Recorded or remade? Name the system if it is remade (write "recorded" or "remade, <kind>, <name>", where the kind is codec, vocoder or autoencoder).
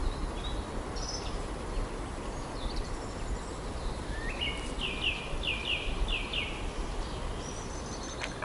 recorded